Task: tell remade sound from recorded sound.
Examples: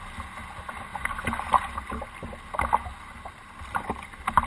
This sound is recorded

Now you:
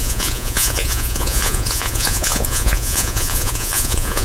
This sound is remade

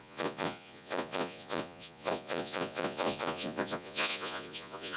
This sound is remade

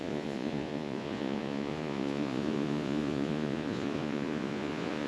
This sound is remade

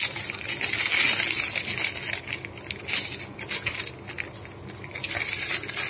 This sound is recorded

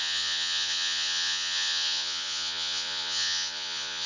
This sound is remade